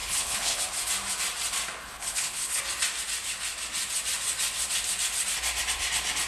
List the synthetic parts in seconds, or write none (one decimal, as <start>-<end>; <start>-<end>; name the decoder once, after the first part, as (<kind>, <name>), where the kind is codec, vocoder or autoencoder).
0.0-0.6 (codec, HILCodec); 1.8-2.6